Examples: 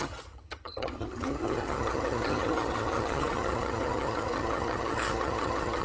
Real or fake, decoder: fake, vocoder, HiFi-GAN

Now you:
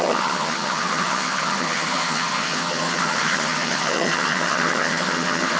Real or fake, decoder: fake, vocoder, HiFi-GAN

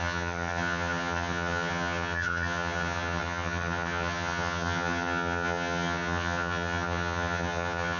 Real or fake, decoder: fake, vocoder, HiFi-GAN